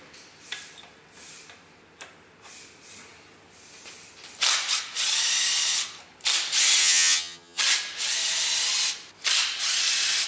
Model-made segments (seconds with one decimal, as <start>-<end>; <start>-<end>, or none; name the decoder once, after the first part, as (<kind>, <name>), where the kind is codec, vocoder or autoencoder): 6.8-7.6 (vocoder, HiFi-GAN)